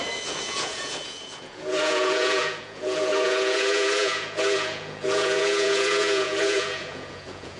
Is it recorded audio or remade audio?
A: remade